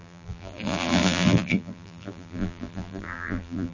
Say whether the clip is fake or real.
fake